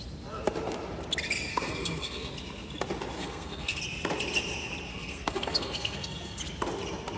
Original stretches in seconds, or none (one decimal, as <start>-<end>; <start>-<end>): 0.0-1.5; 2.3-3.2; 3.8-4.9; 6.4-7.2